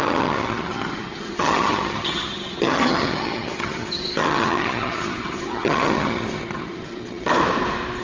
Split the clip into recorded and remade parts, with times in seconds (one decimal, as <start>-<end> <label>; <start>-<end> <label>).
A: 0.0-7.3 remade; 7.3-8.0 recorded

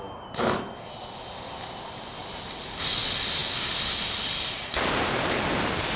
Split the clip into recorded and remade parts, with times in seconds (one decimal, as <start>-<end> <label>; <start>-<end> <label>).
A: 0.0-6.0 recorded

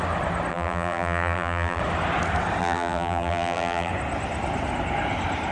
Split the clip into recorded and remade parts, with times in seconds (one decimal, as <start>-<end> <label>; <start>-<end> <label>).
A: 0.0-0.5 recorded; 0.5-1.8 remade; 1.8-2.6 recorded; 2.6-3.9 remade; 3.9-5.5 recorded

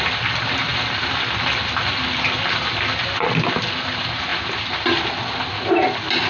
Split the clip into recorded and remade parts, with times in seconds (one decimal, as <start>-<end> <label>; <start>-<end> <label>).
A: 0.0-6.3 recorded

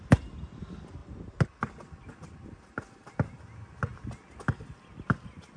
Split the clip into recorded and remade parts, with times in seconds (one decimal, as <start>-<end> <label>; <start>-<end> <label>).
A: 0.0-5.6 recorded

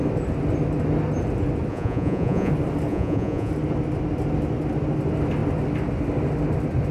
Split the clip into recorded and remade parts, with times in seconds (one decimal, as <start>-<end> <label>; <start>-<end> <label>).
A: 0.0-1.7 recorded; 1.7-2.5 remade; 2.5-2.9 recorded; 2.9-3.5 remade; 3.5-6.9 recorded

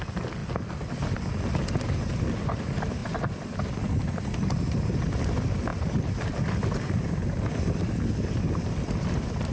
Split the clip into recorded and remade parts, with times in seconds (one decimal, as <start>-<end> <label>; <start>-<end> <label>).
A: 0.0-9.5 recorded

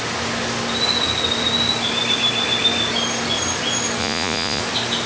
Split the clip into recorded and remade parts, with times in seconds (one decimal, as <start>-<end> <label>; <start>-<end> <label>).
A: 0.0-4.0 recorded; 4.0-4.6 remade; 4.6-5.1 recorded